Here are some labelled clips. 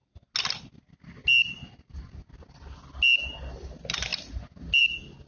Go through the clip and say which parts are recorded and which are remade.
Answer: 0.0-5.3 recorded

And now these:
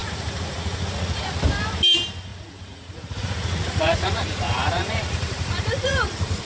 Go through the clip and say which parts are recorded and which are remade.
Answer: 0.0-1.4 remade; 1.4-2.3 recorded; 2.3-6.4 remade

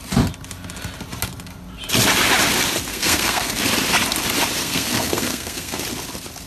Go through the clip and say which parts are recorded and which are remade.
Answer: 0.0-2.9 recorded; 2.9-3.6 remade; 3.6-4.6 recorded; 4.6-5.8 remade; 5.8-6.5 recorded

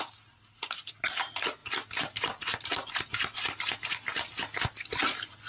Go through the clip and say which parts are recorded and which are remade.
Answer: 0.0-5.5 recorded

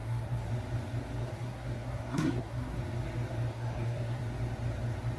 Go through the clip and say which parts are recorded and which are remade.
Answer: 0.0-0.5 remade; 0.5-1.2 recorded; 1.2-2.8 remade; 2.8-3.5 recorded; 3.5-4.2 remade; 4.2-5.2 recorded

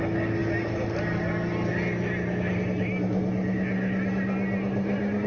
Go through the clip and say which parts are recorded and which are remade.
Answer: 0.0-5.3 recorded